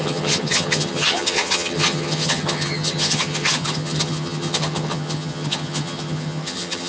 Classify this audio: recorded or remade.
remade